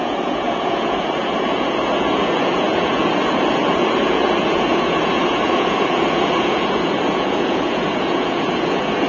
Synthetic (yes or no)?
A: yes